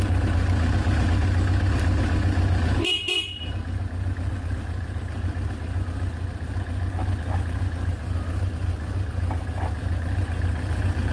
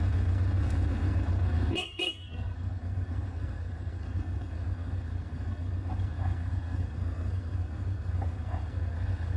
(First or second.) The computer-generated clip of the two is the second